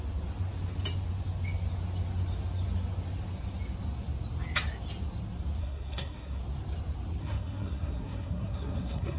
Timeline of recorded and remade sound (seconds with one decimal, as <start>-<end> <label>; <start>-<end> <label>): 0.0-5.6 recorded; 5.6-6.4 remade; 6.4-7.2 recorded; 7.2-9.2 remade